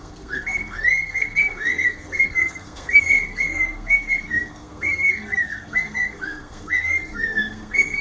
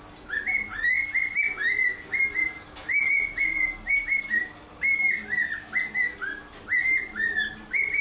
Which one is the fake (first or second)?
first